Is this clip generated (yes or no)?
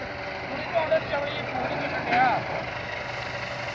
no